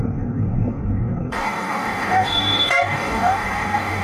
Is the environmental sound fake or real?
fake